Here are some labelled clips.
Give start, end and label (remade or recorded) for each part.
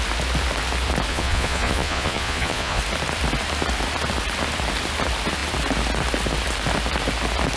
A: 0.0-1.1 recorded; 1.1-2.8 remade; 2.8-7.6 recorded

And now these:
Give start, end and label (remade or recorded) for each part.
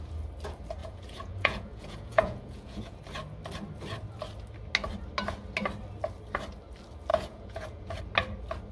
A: 0.0-0.8 recorded; 0.8-3.0 remade; 3.0-7.1 recorded; 7.1-8.0 remade; 8.0-8.7 recorded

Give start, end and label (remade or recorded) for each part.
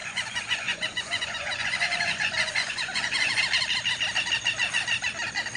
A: 0.0-3.4 remade; 3.4-5.6 recorded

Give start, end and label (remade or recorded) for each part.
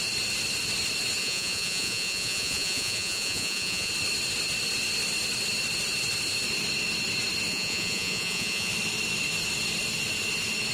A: 0.0-1.2 recorded; 1.2-3.9 remade; 3.9-7.5 recorded; 7.5-8.7 remade; 8.7-10.7 recorded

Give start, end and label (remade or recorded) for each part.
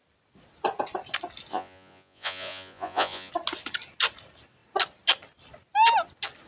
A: 0.0-1.5 recorded; 1.5-3.3 remade; 3.3-6.5 recorded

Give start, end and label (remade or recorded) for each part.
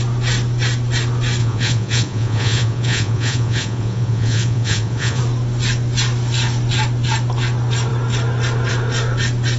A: 0.0-1.4 recorded; 1.4-5.2 remade; 5.2-9.6 recorded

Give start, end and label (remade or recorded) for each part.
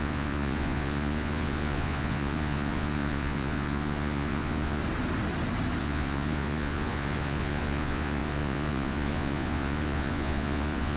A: 0.0-4.8 remade; 4.8-5.8 recorded; 5.8-11.0 remade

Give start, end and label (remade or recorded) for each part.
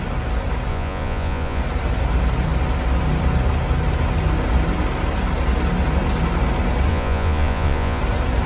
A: 0.0-0.7 recorded; 0.7-1.6 remade; 1.6-6.9 recorded; 6.9-8.0 remade; 8.0-8.5 recorded